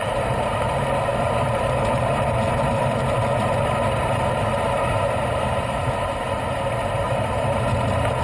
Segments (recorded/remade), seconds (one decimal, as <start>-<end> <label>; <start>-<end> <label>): 0.0-8.2 remade